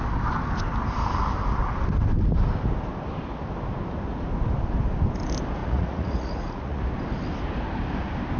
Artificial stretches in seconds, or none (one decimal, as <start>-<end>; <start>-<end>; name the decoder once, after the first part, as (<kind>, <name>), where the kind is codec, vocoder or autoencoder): 5.6-6.8 (vocoder, Vocos)